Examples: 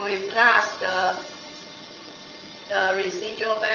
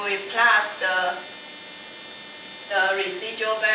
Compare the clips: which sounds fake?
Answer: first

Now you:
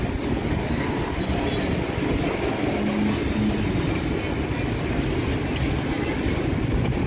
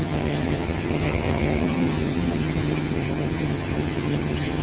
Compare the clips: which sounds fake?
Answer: second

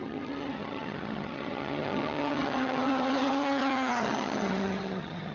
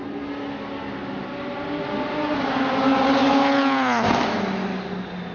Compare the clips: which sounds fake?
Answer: first